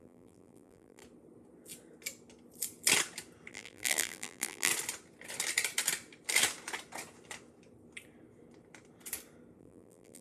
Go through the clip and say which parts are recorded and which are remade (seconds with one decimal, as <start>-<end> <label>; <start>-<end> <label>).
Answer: 0.0-1.0 remade; 1.0-3.5 recorded; 3.5-4.7 remade; 4.7-9.6 recorded; 9.6-10.2 remade